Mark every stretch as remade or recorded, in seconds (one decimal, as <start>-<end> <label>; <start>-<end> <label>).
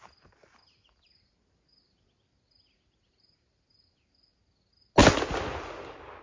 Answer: 0.0-6.2 recorded